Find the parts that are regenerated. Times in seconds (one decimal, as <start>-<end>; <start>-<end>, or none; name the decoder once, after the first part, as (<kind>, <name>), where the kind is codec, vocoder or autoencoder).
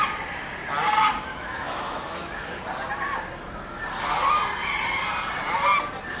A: 1.3-2.6 (autoencoder, DAC-VAE)